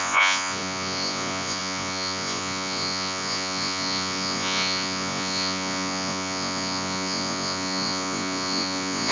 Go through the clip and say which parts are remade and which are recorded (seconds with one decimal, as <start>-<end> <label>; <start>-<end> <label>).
0.0-9.1 remade